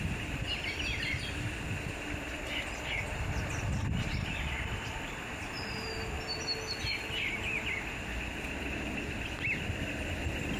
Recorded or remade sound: recorded